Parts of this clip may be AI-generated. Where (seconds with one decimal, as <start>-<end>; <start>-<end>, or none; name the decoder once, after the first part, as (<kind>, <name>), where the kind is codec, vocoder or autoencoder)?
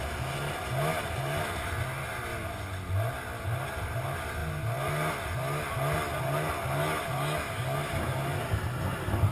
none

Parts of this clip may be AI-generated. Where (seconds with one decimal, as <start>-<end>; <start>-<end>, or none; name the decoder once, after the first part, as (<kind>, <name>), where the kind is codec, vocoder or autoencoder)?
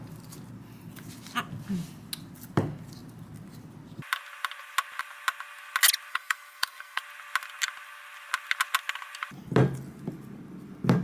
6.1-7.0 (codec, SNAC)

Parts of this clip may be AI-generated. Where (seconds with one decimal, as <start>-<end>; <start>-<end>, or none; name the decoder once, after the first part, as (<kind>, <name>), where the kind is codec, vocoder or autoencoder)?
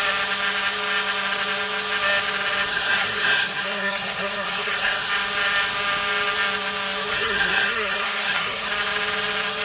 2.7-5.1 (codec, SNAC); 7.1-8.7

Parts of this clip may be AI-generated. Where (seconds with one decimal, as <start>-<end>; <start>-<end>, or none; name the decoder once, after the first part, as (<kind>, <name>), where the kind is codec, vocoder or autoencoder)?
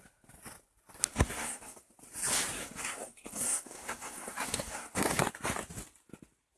1.1-1.9 (codec, SNAC); 2.6-5.3